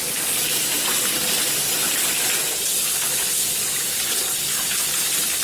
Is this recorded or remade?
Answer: recorded